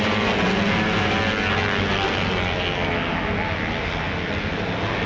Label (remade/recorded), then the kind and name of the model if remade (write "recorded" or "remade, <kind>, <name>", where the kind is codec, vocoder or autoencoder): recorded